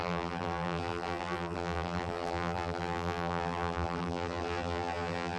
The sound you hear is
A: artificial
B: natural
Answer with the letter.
A